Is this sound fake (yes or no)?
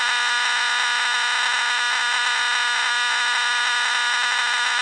no